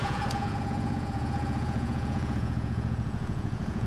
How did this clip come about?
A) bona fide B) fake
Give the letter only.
B